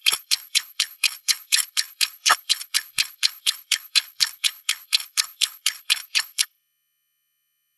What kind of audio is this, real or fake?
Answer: fake